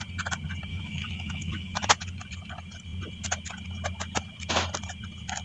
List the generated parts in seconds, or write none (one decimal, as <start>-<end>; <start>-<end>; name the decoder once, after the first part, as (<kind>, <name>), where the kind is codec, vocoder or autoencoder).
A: 0.7-1.9 (autoencoder, DAC-VAE)